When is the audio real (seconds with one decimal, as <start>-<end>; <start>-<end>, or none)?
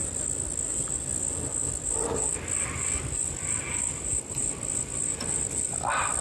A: 0.0-6.2